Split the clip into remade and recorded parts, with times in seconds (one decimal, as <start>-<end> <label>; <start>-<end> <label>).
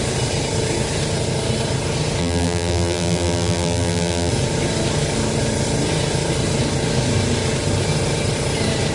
0.0-2.2 recorded; 2.2-4.3 remade; 4.3-8.9 recorded